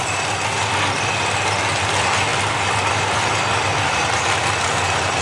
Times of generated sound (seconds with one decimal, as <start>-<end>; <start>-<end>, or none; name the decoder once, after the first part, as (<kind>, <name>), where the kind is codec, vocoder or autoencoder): none